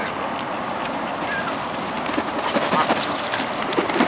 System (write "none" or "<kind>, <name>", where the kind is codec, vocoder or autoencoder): none